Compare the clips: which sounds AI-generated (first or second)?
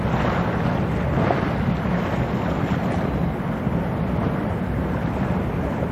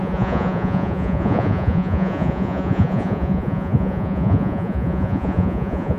second